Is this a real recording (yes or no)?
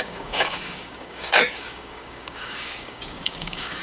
no